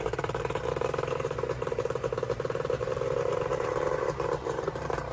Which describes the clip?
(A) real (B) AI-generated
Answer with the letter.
B